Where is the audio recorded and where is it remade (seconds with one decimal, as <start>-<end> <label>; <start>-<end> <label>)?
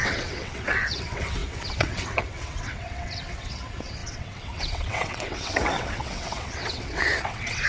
0.0-7.7 remade